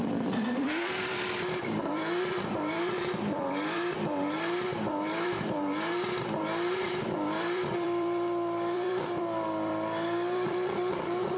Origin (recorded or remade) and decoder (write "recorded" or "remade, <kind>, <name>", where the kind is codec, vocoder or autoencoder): remade, vocoder, BigVGAN v2